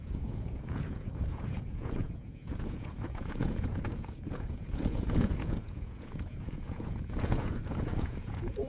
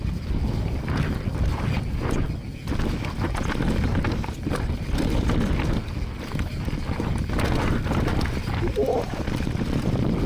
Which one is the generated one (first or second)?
first